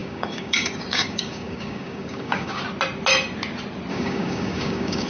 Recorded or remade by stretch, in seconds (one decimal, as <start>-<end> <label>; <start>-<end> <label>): 0.0-2.6 remade; 2.6-3.9 recorded; 3.9-5.1 remade